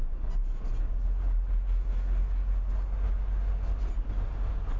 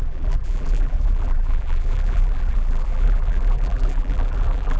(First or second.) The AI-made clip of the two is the second